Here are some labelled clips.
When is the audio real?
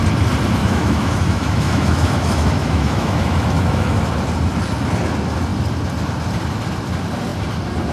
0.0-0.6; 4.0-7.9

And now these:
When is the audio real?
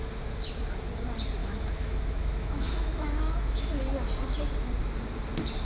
0.0-1.4; 3.7-5.6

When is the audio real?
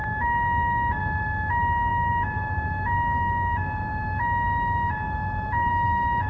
none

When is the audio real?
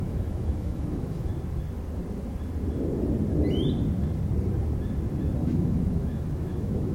1.3-5.4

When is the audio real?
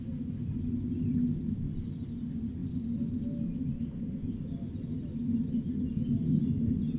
0.0-7.0